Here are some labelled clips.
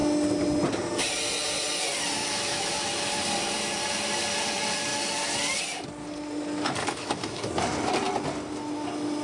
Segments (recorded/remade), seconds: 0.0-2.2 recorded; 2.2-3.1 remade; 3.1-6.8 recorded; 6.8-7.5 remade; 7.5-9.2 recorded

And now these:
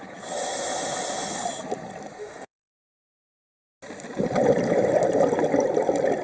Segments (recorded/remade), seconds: 0.0-2.2 recorded; 2.2-2.7 remade; 2.7-6.2 recorded

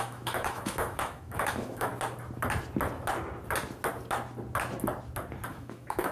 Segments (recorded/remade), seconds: 0.0-1.9 remade; 1.9-5.5 recorded; 5.5-6.1 remade

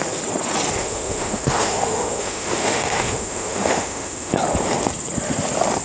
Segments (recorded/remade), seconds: 0.0-0.8 recorded; 0.8-4.3 remade; 4.3-5.8 recorded

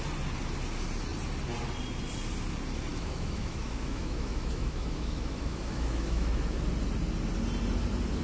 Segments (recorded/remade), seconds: 0.0-2.9 recorded; 2.9-6.6 remade; 6.6-8.2 recorded